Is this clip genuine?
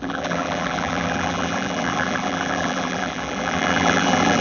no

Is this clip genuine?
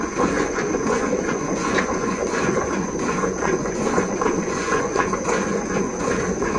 no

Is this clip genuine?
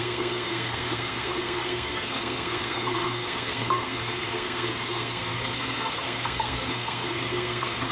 no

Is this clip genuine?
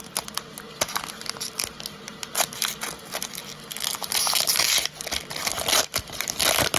yes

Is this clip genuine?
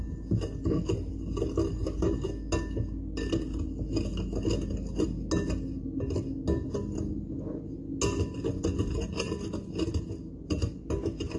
yes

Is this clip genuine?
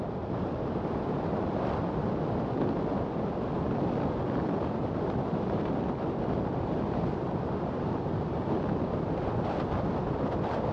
no